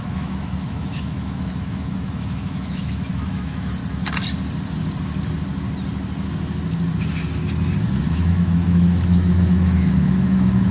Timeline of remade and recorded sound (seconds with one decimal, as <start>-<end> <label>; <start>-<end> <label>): 0.0-3.8 remade; 3.8-8.1 recorded; 8.1-10.7 remade